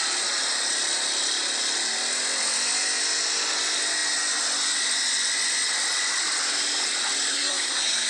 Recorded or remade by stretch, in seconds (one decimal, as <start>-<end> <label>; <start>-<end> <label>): 0.0-7.3 recorded; 7.3-8.1 remade